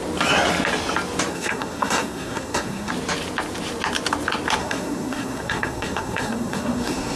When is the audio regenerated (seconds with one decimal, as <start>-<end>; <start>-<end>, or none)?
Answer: 1.3-2.9; 4.6-7.2